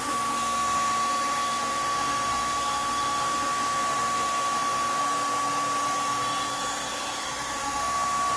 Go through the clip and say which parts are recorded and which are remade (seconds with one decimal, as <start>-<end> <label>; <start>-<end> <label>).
0.0-5.0 remade; 5.0-7.5 recorded; 7.5-8.4 remade